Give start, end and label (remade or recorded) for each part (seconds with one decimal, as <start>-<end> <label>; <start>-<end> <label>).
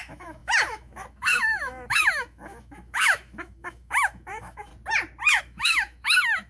0.0-4.7 remade; 4.7-5.4 recorded; 5.4-6.5 remade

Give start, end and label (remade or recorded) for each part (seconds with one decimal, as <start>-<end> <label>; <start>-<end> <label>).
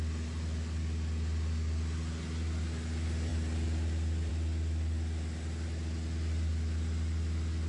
0.0-7.7 recorded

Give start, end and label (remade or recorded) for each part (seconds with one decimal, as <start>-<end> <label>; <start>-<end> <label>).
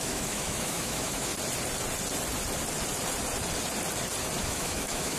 0.0-1.3 remade; 1.3-4.4 recorded; 4.4-5.2 remade